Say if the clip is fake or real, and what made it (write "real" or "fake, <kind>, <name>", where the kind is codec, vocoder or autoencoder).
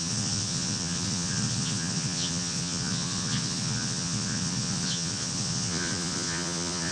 fake, vocoder, Vocos